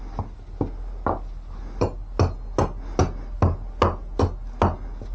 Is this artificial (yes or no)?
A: no